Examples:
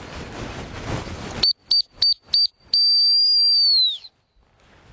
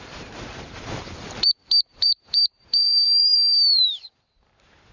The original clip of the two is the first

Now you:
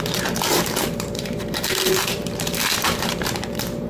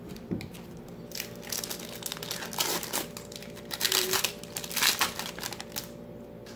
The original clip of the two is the second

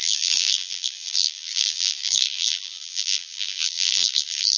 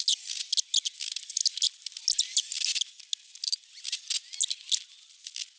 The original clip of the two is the second